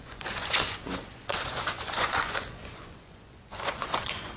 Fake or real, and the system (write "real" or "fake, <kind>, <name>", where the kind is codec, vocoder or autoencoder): fake, vocoder, Vocos